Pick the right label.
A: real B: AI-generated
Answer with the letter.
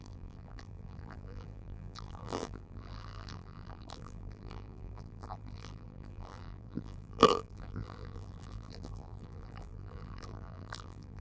B